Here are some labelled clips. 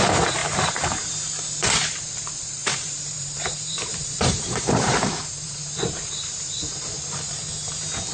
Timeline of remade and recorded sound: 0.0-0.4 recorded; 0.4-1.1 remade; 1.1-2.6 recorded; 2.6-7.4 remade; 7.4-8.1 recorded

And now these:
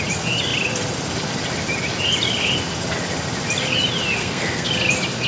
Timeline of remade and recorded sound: 0.0-4.2 recorded; 4.2-4.7 remade; 4.7-5.3 recorded

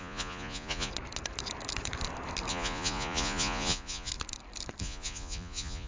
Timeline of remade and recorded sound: 0.0-0.9 remade; 0.9-2.5 recorded; 2.5-4.1 remade; 4.1-4.8 recorded; 4.8-5.9 remade

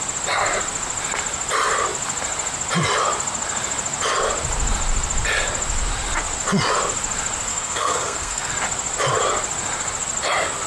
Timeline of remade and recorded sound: 0.0-7.5 recorded; 7.5-8.5 remade; 8.5-10.7 recorded

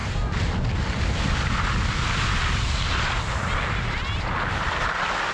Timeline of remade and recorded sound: 0.0-5.3 recorded